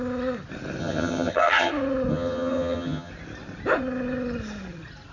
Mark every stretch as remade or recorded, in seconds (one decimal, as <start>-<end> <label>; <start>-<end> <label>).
0.0-0.8 recorded; 0.8-1.7 remade; 1.7-2.1 recorded; 2.1-3.1 remade; 3.1-5.1 recorded